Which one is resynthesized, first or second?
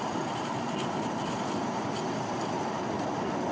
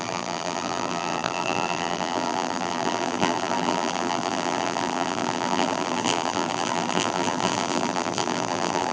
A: second